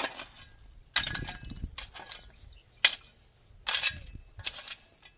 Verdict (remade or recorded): recorded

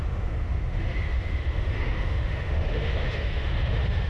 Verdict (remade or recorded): remade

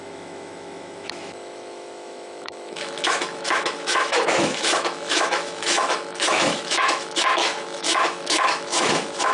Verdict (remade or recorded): remade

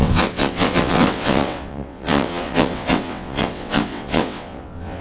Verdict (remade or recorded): remade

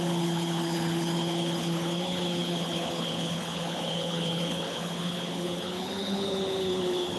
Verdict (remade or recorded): remade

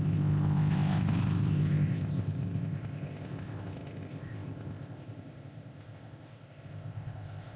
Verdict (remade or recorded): remade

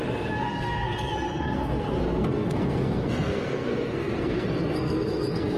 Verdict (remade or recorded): remade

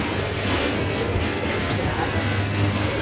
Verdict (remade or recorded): remade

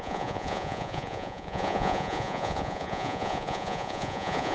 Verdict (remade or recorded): remade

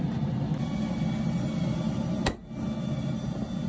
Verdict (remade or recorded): recorded